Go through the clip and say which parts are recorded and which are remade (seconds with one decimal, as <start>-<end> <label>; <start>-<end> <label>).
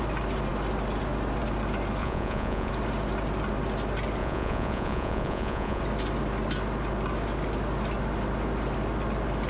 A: 0.0-2.0 recorded; 2.0-2.7 remade; 2.7-4.2 recorded; 4.2-5.8 remade; 5.8-9.5 recorded